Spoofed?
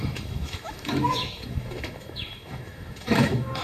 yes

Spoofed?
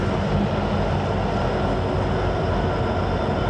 no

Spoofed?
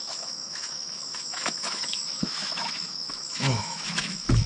yes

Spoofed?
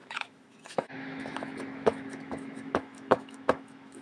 yes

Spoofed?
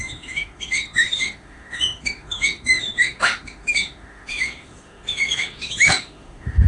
yes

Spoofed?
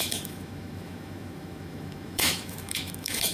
yes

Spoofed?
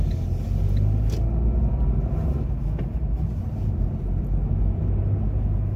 no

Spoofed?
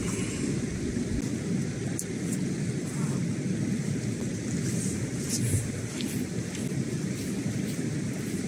no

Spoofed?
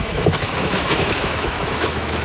yes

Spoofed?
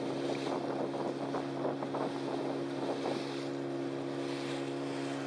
no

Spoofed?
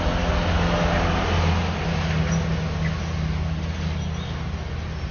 no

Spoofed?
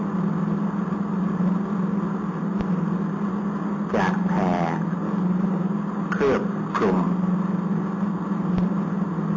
no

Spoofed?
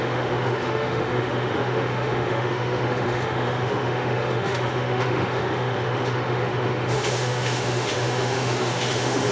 yes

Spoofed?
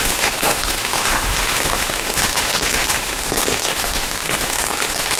yes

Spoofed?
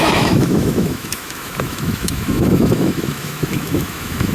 yes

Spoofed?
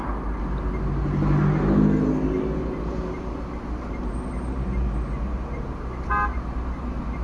no